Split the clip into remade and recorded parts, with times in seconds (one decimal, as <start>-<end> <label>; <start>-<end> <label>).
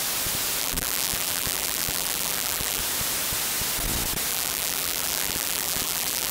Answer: 0.0-0.6 recorded; 0.6-2.8 remade; 2.8-4.3 recorded; 4.3-6.3 remade